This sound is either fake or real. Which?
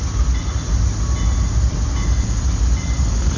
real